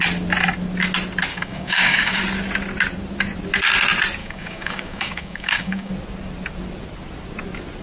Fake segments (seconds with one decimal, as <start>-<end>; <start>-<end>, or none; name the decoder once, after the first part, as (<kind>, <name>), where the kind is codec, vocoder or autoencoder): 1.3-2.2 (codec, DAC); 4.2-5.9